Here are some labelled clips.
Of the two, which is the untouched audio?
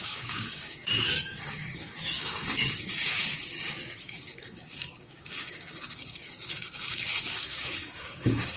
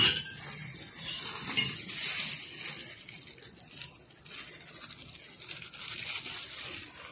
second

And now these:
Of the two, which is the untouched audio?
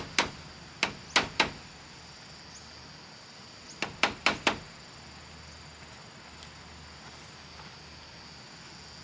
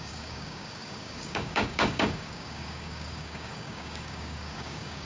first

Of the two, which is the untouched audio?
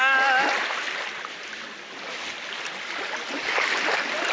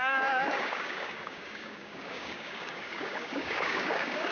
first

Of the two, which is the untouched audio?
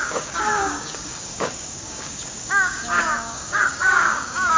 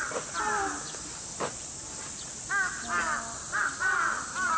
second